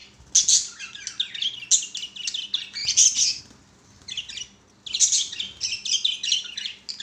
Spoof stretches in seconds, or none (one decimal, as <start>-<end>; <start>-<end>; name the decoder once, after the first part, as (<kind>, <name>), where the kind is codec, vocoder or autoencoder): none